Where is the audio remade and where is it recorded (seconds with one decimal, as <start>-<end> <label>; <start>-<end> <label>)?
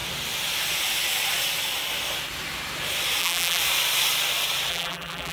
0.0-3.2 recorded; 3.2-3.6 remade; 3.6-4.7 recorded; 4.7-5.3 remade